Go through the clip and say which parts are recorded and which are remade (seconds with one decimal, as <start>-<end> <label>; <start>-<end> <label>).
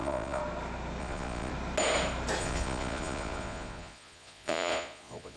0.0-0.4 remade; 0.4-1.0 recorded; 1.0-1.5 remade; 1.5-2.4 recorded; 2.4-5.4 remade